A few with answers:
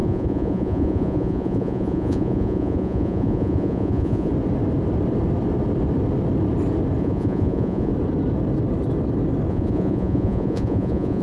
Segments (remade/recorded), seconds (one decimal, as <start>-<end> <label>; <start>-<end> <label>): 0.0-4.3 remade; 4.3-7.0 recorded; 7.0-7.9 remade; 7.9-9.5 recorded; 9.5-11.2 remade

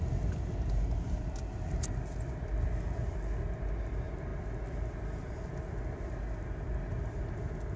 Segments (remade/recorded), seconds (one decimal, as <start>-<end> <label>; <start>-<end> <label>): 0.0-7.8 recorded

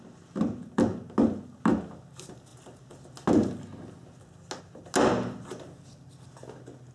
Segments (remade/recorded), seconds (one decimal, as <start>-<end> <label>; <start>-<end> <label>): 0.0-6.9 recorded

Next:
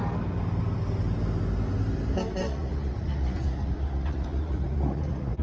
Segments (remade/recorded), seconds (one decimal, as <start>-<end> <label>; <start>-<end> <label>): 0.0-2.4 recorded; 2.4-5.4 remade

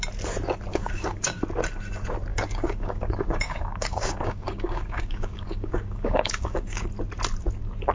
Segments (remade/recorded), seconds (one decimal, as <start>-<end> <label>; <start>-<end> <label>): 0.0-0.7 recorded; 0.7-1.4 remade; 1.4-2.3 recorded; 2.3-6.9 remade; 6.9-7.9 recorded